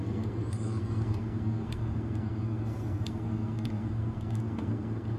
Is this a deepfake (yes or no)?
yes